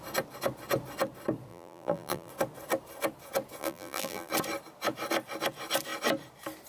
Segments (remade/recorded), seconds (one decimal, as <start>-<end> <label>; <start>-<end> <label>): 0.0-1.5 recorded; 1.5-2.3 remade; 2.3-3.6 recorded; 3.6-4.3 remade; 4.3-6.7 recorded

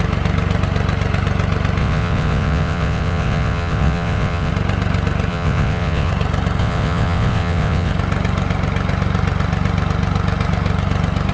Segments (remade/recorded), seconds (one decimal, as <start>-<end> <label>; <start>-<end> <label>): 0.0-1.8 recorded; 1.8-4.5 remade; 4.5-5.3 recorded; 5.3-6.1 remade; 6.1-6.6 recorded; 6.6-7.9 remade; 7.9-11.3 recorded

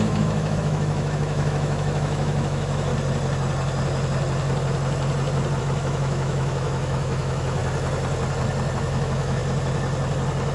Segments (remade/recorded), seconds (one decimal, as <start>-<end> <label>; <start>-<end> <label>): 0.0-2.9 remade; 2.9-5.6 recorded; 5.6-7.6 remade; 7.6-8.8 recorded; 8.8-9.4 remade; 9.4-10.5 recorded

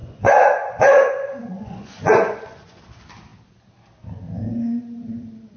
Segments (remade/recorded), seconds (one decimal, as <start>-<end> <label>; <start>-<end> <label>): 0.0-2.8 remade; 2.8-5.6 recorded